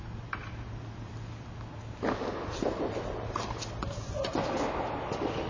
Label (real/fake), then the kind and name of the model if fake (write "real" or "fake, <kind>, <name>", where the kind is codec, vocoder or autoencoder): real